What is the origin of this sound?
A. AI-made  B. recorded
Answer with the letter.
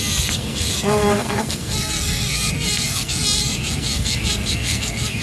A